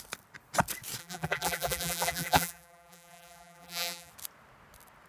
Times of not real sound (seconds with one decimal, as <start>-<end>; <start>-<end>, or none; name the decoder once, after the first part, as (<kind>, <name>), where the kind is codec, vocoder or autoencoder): 1.0-4.1 (vocoder, BigVGAN v2)